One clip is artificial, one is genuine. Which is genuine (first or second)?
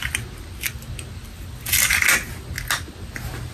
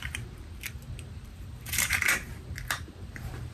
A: first